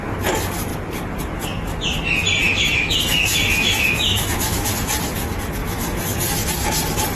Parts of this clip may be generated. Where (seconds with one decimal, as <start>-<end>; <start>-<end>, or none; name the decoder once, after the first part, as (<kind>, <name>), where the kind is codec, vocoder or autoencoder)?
2.4-4.7 (autoencoder, DAC-VAE); 5.6-6.2